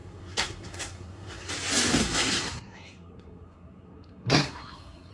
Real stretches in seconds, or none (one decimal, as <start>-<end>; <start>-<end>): 1.5-2.0